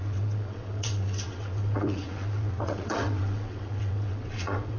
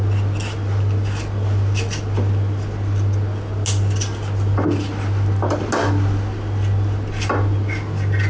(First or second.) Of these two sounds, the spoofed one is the first